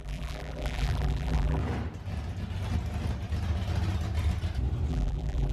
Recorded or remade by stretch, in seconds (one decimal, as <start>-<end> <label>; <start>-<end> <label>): 0.0-1.6 remade; 1.6-4.9 recorded; 4.9-5.5 remade